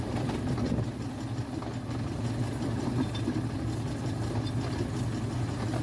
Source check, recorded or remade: recorded